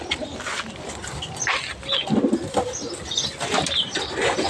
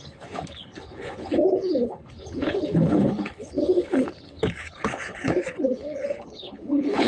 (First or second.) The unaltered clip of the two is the first